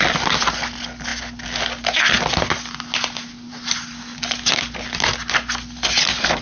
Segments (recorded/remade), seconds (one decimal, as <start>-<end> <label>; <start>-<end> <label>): 0.0-6.4 recorded